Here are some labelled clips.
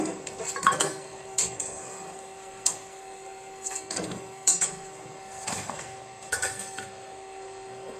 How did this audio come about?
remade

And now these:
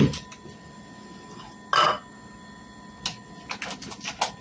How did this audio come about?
recorded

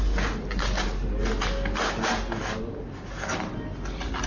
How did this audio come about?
recorded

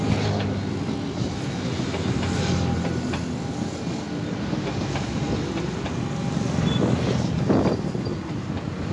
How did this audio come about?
recorded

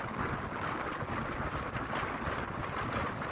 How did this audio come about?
recorded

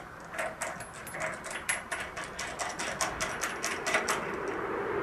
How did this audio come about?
recorded